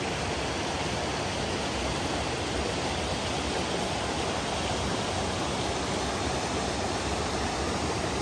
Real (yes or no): yes